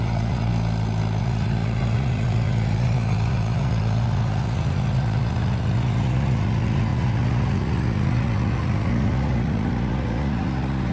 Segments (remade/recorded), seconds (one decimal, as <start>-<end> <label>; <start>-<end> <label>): 0.0-0.5 remade; 0.5-1.2 recorded; 1.2-10.9 remade